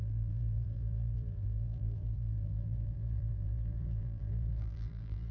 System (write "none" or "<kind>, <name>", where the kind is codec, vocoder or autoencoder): vocoder, BigVGAN v2